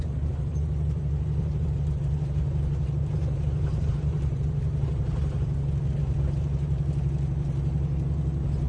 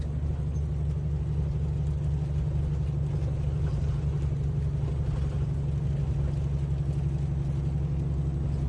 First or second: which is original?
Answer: second